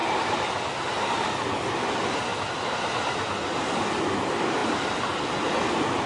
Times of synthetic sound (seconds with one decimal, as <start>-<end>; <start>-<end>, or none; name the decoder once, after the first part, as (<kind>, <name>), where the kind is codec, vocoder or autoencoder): none